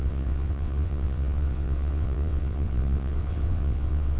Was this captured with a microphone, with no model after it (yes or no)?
no